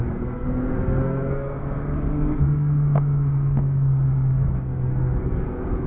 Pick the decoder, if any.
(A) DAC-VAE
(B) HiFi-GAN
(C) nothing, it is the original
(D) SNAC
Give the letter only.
D